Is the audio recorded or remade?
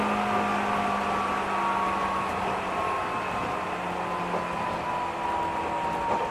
recorded